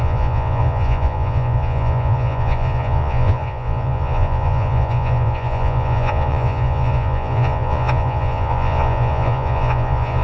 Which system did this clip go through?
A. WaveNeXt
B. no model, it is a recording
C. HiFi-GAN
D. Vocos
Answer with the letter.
D